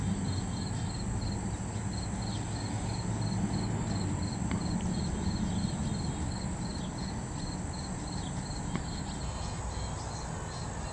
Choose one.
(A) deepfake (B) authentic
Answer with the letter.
B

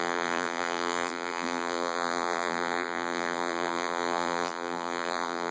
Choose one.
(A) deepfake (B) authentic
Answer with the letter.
A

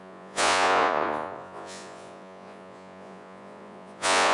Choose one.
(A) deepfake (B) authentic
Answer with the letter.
A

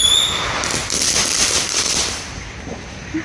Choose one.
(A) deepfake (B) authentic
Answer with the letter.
B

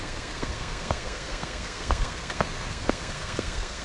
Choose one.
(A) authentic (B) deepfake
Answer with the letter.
B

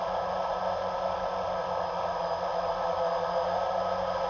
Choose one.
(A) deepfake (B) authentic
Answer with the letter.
B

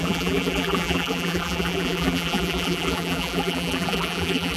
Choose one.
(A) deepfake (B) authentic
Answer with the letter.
A